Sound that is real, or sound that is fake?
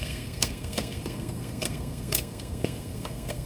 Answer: fake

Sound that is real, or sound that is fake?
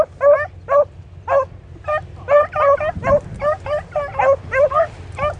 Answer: real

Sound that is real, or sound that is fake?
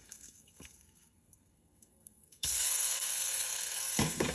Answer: fake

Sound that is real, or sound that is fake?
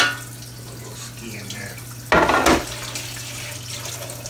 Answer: real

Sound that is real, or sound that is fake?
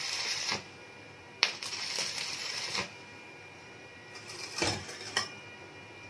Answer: fake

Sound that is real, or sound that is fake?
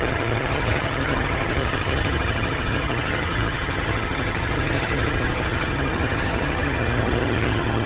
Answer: fake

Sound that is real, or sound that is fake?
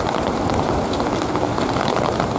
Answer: real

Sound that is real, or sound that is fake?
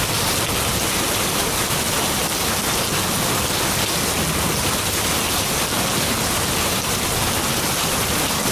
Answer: real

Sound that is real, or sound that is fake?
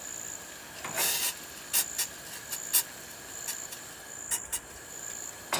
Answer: real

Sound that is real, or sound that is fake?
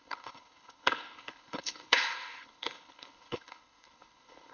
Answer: fake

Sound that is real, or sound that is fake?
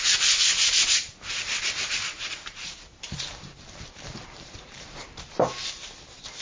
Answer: fake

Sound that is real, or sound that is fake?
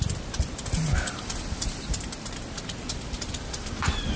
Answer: real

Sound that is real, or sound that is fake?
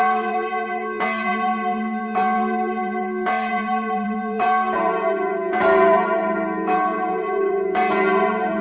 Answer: fake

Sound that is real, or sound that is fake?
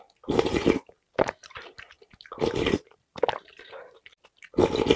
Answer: real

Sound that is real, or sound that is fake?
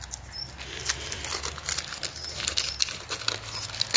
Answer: real